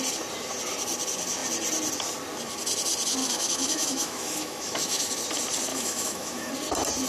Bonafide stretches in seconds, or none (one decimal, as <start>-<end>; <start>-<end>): 0.0-3.2; 5.1-5.7; 6.5-7.1